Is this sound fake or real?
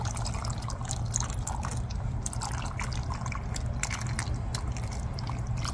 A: real